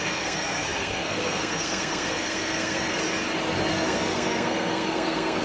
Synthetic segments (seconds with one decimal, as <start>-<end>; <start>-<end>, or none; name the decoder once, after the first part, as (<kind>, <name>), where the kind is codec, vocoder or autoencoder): 0.0-3.0 (codec, SNAC); 3.7-5.4